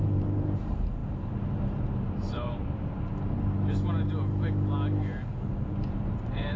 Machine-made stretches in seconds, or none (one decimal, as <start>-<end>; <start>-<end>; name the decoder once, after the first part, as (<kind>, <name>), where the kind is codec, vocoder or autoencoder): 0.0-1.0 (vocoder, BigVGAN v2); 2.2-3.1; 5.9-6.6